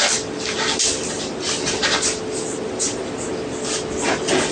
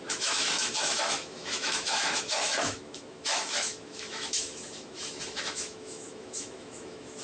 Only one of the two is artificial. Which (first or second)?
second